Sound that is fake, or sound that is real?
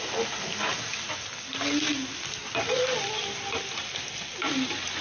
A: real